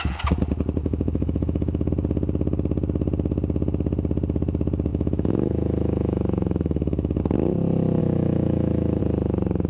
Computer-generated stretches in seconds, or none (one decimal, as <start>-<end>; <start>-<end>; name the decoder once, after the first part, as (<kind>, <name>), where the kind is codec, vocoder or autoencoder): 0.8-1.9 (autoencoder, DAC-VAE); 4.9-7.2; 8.0-9.0

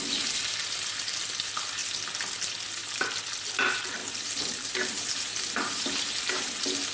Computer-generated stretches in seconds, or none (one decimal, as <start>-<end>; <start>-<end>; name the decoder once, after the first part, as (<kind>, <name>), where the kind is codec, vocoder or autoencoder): none

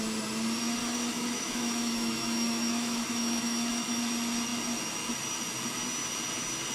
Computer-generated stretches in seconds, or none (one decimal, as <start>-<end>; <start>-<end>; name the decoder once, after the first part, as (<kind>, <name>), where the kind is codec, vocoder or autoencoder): 0.8-4.0 (autoencoder, DAC-VAE)

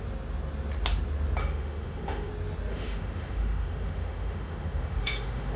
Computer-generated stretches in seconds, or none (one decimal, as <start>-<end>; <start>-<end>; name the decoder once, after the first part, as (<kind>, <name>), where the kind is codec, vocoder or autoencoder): 1.4-2.3 (autoencoder, DAC-VAE); 2.7-5.6

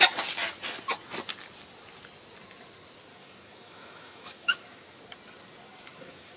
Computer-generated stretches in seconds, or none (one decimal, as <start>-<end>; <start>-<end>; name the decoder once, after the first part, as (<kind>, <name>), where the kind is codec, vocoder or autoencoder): 3.1-5.0 (autoencoder, DAC-VAE); 5.9-6.4

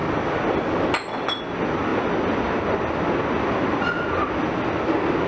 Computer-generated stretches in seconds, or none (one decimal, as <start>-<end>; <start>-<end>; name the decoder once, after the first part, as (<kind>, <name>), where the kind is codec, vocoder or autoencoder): none

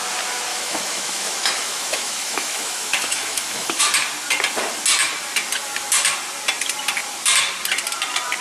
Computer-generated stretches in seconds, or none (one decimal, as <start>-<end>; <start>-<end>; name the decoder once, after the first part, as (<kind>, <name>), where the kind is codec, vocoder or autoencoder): 0.5-3.8 (autoencoder, DAC-VAE)

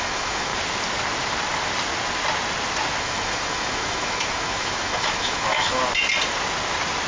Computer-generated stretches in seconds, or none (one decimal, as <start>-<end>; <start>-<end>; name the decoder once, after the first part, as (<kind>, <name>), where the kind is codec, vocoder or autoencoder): 0.0-0.5 (autoencoder, DAC-VAE); 3.0-5.8